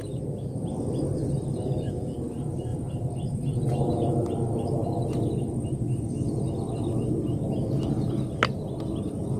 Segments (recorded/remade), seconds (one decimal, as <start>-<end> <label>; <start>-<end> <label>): 0.0-9.4 recorded